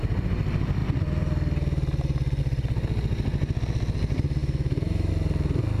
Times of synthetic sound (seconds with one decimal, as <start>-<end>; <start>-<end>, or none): 4.4-5.1